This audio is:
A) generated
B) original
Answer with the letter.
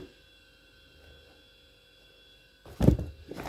B